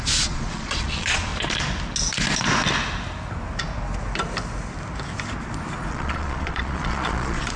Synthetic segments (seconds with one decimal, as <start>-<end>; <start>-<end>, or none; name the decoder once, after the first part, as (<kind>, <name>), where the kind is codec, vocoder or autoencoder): 0.0-1.3 (vocoder, Vocos); 5.9-7.6